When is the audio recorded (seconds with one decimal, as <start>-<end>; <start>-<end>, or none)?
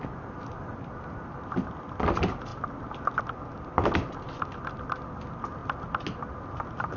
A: 0.0-7.0